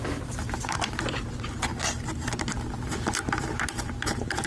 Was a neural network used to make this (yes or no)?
yes